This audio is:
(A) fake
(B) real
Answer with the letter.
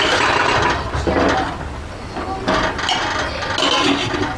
B